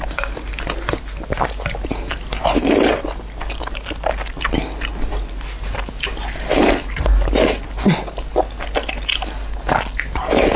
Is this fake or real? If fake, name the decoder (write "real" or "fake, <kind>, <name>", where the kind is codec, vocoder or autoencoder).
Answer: real